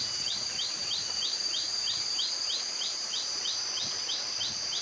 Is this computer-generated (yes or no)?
yes